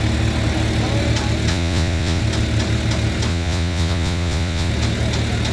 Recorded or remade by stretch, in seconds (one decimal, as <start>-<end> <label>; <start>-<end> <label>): 0.0-1.5 recorded; 1.5-2.2 remade; 2.2-3.3 recorded; 3.3-4.7 remade; 4.7-5.5 recorded